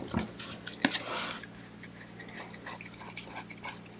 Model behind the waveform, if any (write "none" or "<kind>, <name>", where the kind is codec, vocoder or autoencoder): none